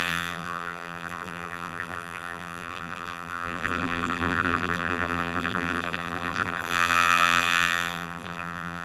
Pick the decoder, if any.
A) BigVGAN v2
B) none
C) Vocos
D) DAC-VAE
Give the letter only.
A